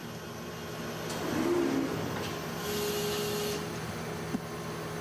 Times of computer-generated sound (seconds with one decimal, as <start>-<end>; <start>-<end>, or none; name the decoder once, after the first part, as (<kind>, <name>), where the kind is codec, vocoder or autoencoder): none